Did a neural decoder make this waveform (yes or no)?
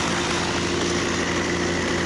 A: no